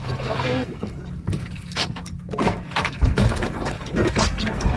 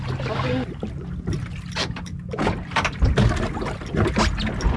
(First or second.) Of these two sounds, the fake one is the first